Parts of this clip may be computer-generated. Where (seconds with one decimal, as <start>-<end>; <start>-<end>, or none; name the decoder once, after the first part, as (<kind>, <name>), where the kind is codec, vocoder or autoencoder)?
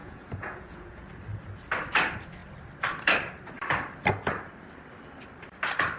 0.0-1.1 (vocoder, Vocos)